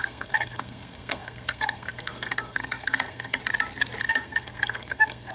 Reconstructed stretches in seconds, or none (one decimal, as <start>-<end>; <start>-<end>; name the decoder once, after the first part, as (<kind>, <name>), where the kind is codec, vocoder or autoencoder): 0.0-3.4 (codec, SNAC); 4.0-5.3